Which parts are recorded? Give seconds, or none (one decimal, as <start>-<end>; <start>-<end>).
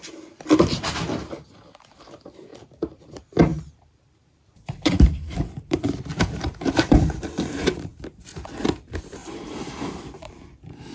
0.0-2.5; 3.1-3.5; 8.0-10.9